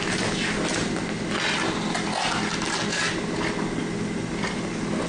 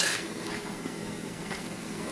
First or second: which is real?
first